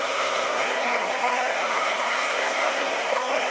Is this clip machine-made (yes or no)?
yes